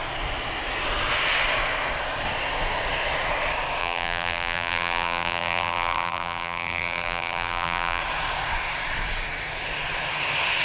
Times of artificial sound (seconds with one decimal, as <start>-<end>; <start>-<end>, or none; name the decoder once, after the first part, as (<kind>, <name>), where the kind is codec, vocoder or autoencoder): 3.8-8.0 (vocoder, BigVGAN v2)